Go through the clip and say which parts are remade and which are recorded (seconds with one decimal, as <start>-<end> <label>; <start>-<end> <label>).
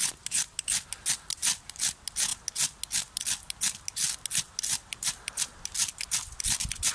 0.0-6.9 recorded